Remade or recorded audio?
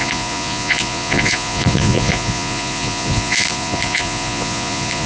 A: remade